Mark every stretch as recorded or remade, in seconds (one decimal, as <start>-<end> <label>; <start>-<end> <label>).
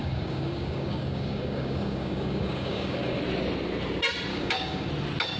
0.0-3.2 remade; 3.2-4.3 recorded; 4.3-4.9 remade; 4.9-5.4 recorded